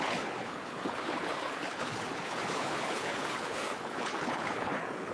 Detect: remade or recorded remade